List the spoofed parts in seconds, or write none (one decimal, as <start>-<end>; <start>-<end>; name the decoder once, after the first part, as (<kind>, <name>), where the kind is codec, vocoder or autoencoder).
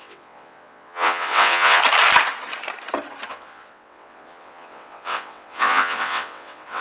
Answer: 0.0-1.8 (vocoder, WaveNeXt); 3.3-6.8